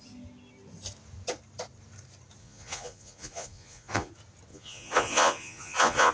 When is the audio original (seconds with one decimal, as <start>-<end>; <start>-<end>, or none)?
0.0-2.4; 4.1-4.5

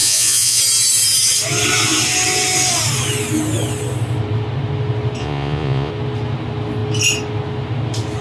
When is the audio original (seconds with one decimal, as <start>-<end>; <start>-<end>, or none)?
0.6-5.2; 5.9-8.2

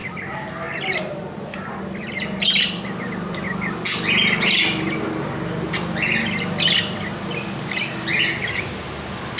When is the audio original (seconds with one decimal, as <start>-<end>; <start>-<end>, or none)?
0.0-9.4